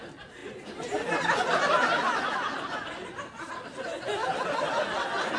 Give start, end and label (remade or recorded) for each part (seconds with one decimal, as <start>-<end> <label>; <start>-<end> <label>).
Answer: 0.0-5.4 recorded